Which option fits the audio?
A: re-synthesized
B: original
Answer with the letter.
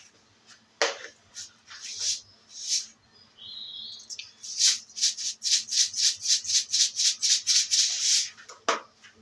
B